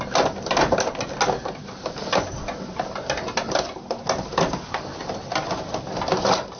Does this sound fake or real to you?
real